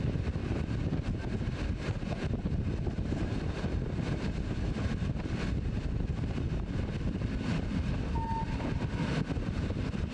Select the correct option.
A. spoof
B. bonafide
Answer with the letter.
B